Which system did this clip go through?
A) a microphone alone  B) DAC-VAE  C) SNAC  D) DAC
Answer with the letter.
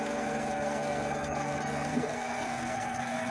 C